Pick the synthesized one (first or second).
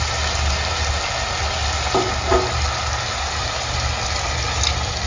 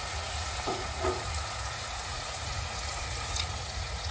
second